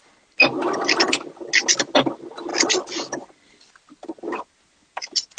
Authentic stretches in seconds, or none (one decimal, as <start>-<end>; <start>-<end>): 0.0-5.4

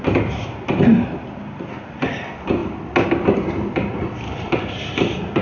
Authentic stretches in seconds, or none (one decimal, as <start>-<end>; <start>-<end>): 0.0-5.4

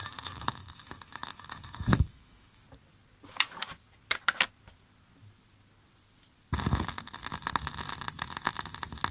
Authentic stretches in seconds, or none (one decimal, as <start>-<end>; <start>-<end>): 2.6-9.1

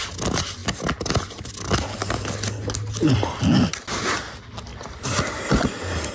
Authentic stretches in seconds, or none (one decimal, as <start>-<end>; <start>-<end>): 0.0-4.7

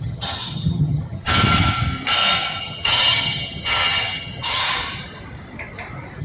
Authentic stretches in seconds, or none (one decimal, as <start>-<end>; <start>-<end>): 1.3-2.6; 4.6-6.2

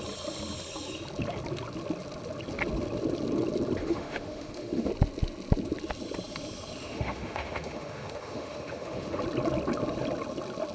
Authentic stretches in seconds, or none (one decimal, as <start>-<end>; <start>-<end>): 0.0-3.8; 4.9-6.8; 9.2-10.7

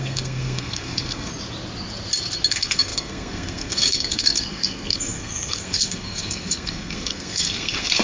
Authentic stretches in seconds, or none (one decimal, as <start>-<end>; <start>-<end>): 1.3-2.5

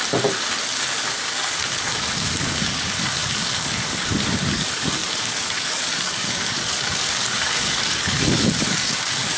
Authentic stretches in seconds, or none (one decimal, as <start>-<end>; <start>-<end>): 0.0-0.8